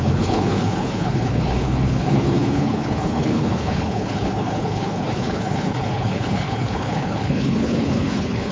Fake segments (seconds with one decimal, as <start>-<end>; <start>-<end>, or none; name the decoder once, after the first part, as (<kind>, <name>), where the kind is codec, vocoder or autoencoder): 0.0-8.5 (codec, HILCodec)